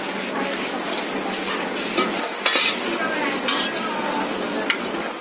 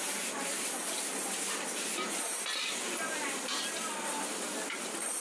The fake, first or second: second